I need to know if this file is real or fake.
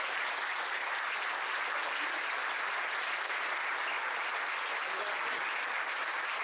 real